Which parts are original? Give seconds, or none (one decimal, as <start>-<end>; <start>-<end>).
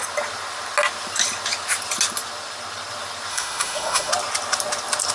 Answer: 0.0-3.3; 4.1-5.1